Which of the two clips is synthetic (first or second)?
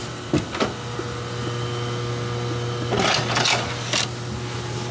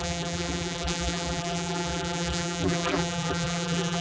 second